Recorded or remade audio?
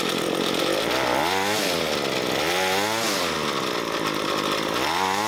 recorded